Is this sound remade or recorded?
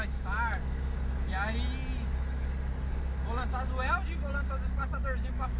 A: recorded